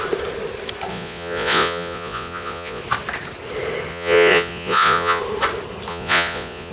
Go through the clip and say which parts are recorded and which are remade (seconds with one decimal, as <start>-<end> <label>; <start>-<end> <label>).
0.0-0.9 recorded; 0.9-2.8 remade; 2.8-3.9 recorded; 3.9-5.2 remade; 5.2-5.9 recorded; 5.9-6.7 remade